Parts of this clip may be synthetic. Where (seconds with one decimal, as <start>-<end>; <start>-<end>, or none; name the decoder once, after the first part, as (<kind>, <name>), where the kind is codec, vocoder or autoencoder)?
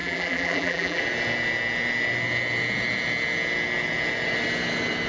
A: 0.0-1.0 (vocoder, BigVGAN v2)